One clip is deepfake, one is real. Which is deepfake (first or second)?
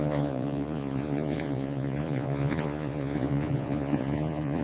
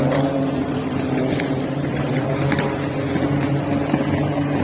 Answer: first